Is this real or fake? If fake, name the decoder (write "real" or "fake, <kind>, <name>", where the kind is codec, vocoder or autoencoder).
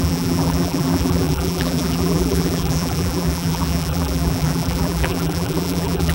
fake, vocoder, BigVGAN v2